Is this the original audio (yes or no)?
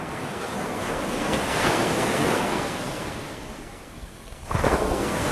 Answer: no